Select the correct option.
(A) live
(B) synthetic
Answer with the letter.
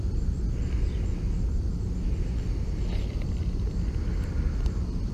A